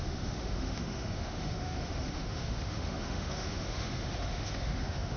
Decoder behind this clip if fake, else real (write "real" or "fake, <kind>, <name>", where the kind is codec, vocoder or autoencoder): fake, autoencoder, DAC-VAE